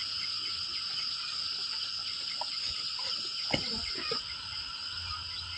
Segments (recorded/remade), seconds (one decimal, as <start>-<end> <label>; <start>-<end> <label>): 0.0-2.0 recorded; 2.0-3.1 remade; 3.1-5.6 recorded